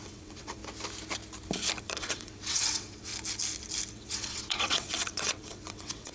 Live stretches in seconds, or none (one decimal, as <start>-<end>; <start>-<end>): 0.6-1.8; 3.1-3.9